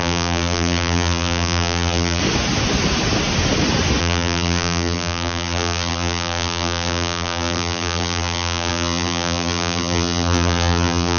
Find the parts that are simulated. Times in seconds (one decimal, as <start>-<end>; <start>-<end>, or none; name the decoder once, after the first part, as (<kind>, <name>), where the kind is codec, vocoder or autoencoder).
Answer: 0.0-2.2 (vocoder, BigVGAN v2); 4.0-11.2